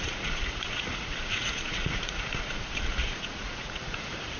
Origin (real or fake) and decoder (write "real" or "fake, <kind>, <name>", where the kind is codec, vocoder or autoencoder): fake, vocoder, Vocos